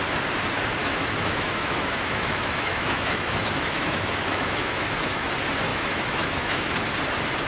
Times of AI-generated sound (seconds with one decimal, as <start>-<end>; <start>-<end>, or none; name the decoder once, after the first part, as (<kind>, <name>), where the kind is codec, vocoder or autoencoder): 0.8-5.3 (autoencoder, DAC-VAE); 5.7-6.7

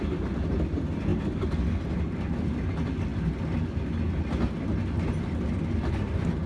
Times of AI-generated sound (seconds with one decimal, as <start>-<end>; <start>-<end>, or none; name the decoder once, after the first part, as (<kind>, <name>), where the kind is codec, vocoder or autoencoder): none

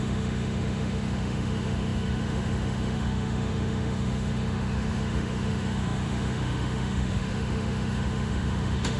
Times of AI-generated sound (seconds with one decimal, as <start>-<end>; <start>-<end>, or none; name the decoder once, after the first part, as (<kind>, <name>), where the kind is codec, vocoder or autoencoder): 0.0-9.0 (autoencoder, DAC-VAE)

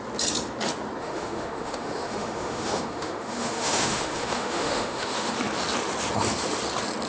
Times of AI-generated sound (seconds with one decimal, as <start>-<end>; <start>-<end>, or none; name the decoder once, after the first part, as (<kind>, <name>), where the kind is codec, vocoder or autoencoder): 1.0-5.3 (autoencoder, DAC-VAE)

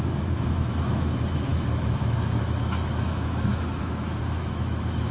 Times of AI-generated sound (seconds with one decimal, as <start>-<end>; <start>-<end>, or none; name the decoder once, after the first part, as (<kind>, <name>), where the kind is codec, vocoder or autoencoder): 0.0-5.1 (autoencoder, DAC-VAE)